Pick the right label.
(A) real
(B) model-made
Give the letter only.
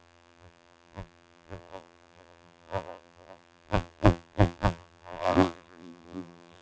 B